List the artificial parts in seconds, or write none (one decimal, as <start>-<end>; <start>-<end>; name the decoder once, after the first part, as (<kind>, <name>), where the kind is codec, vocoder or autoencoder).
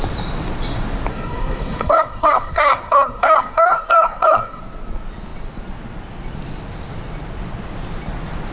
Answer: 1.1-4.6 (codec, SNAC)